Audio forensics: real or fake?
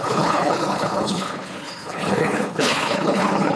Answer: fake